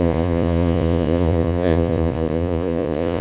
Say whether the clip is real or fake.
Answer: fake